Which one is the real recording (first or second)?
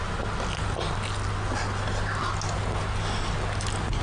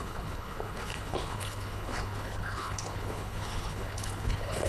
first